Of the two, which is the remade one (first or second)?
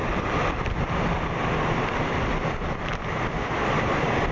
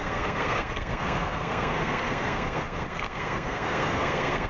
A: second